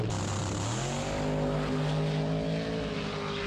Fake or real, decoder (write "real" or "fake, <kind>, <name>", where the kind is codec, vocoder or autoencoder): real